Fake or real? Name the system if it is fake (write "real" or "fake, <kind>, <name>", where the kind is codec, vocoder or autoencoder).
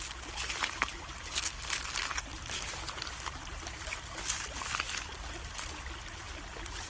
real